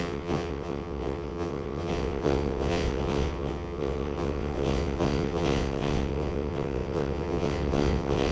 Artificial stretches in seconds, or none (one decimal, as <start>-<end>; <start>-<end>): 0.0-8.3